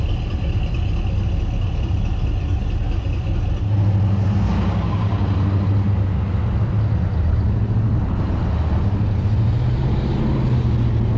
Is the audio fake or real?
real